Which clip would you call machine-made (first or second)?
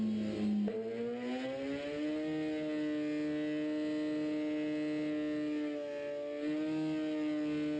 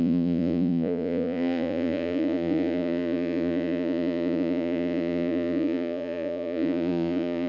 second